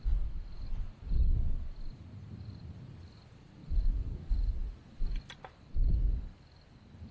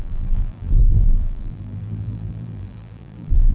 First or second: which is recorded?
first